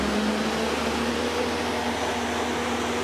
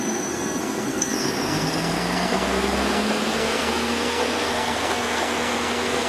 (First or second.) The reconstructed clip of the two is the second